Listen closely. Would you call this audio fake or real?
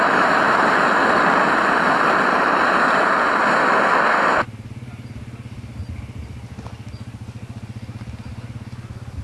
real